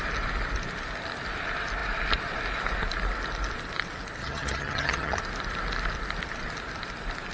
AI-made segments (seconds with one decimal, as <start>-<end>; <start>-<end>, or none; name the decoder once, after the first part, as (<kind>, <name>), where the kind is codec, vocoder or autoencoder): 4.2-5.2 (vocoder, HiFi-GAN)